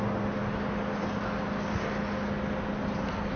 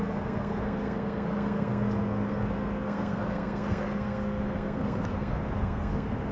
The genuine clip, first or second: first